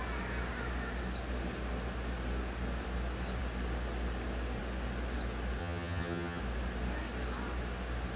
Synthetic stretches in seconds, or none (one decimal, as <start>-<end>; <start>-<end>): 5.6-6.4